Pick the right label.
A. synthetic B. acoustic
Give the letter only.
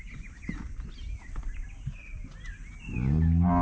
B